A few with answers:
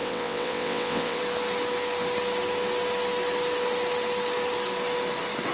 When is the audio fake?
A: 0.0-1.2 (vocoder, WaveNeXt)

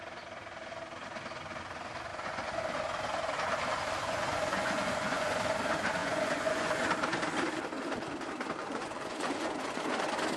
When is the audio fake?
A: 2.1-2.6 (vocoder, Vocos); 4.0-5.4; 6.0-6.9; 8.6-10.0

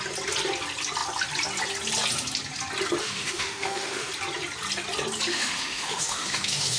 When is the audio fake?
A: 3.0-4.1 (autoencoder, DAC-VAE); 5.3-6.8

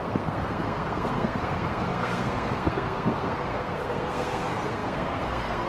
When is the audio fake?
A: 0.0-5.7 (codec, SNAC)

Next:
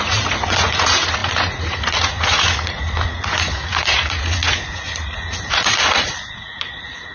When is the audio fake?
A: 0.0-7.1 (vocoder, Vocos)